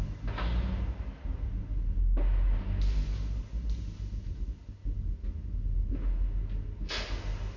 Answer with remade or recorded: recorded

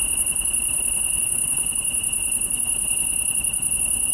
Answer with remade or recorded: recorded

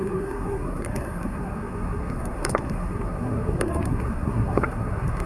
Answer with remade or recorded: remade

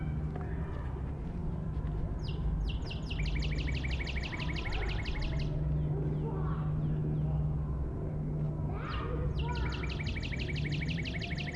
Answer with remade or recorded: recorded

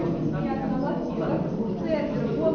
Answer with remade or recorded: recorded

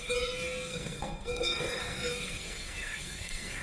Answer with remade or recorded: remade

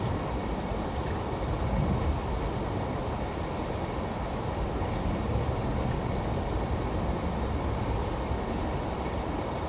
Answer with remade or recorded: recorded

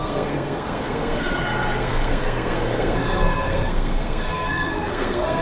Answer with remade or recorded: remade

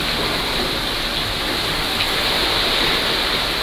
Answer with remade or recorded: recorded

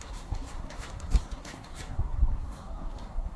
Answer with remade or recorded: remade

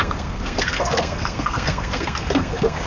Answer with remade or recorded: remade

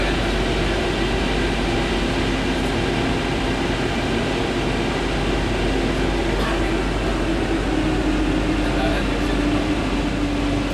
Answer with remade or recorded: recorded